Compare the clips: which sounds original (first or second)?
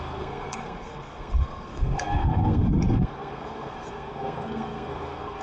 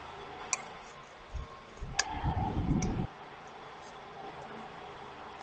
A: second